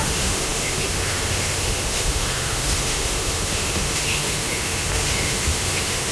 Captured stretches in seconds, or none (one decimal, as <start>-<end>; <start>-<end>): none